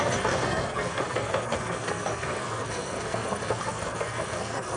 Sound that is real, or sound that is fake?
fake